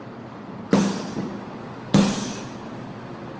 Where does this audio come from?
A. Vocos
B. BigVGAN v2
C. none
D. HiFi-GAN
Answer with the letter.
C